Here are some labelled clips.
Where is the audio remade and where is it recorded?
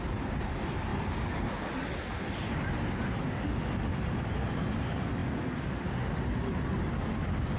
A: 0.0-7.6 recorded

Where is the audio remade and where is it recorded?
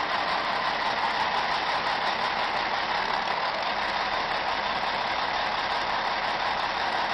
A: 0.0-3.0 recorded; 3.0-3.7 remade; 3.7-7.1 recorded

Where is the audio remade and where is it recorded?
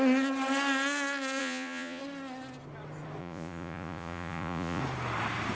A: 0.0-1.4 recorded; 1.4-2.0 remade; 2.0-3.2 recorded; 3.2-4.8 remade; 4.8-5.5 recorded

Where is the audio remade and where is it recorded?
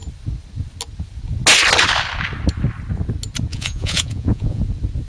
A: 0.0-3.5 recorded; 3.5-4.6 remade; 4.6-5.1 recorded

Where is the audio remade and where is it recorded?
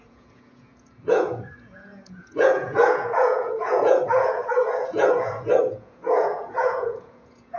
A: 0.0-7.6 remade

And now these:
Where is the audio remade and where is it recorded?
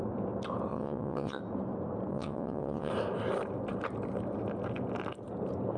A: 0.0-0.7 recorded; 0.7-1.4 remade; 1.4-2.1 recorded; 2.1-2.9 remade; 2.9-5.8 recorded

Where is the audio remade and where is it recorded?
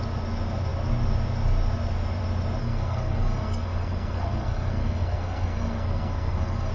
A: 0.0-2.6 recorded; 2.6-6.7 remade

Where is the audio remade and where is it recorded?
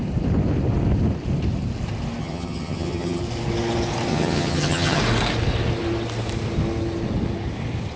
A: 0.0-2.2 recorded; 2.2-3.2 remade; 3.2-4.1 recorded; 4.1-5.0 remade; 5.0-8.0 recorded